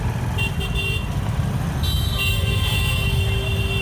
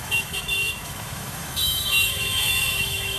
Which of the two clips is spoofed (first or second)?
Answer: second